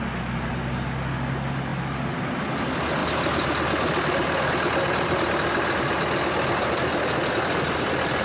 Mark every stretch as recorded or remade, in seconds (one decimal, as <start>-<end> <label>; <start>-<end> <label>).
0.0-8.2 recorded